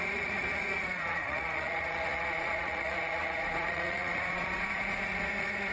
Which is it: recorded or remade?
remade